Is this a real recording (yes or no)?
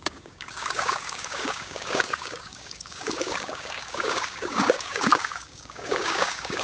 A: no